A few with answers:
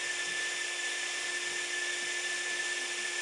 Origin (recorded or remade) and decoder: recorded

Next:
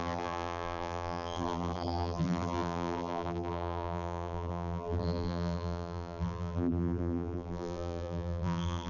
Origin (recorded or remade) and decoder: remade, vocoder, BigVGAN v2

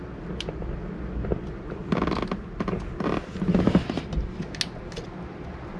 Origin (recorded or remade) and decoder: recorded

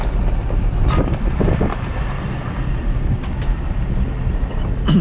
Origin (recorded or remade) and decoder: remade, vocoder, BigVGAN v2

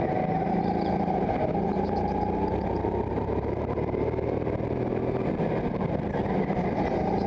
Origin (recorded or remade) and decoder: remade, vocoder, BigVGAN v2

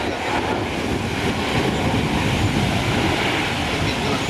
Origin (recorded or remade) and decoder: recorded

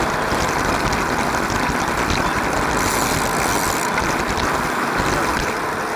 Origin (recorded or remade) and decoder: recorded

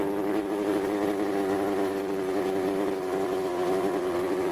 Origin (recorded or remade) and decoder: recorded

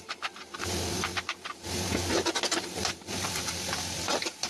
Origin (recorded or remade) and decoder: remade, vocoder, BigVGAN v2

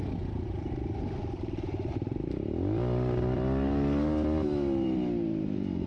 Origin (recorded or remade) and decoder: remade, vocoder, BigVGAN v2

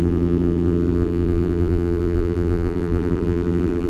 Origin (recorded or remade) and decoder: remade, vocoder, BigVGAN v2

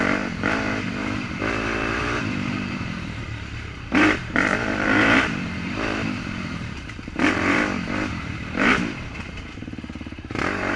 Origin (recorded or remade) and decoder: remade, vocoder, BigVGAN v2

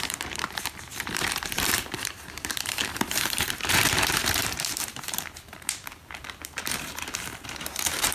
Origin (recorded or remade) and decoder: remade, vocoder, BigVGAN v2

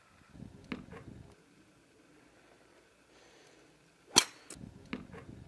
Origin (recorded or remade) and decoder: recorded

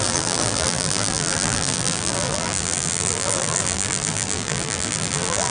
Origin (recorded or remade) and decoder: remade, vocoder, BigVGAN v2